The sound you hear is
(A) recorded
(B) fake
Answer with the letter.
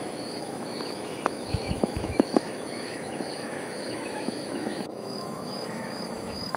B